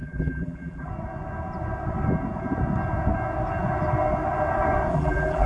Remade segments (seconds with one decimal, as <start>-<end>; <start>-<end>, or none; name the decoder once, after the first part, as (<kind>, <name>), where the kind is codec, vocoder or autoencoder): 0.0-0.9 (vocoder, BigVGAN v2); 4.9-5.5